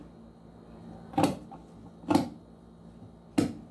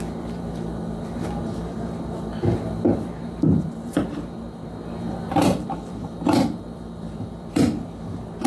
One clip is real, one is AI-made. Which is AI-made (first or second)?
second